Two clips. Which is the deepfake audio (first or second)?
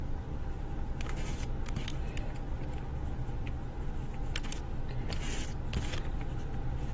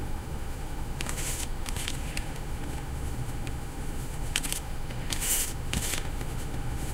second